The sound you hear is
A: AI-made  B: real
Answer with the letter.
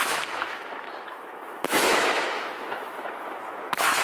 A